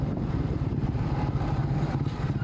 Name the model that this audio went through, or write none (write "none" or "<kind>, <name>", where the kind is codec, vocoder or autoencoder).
none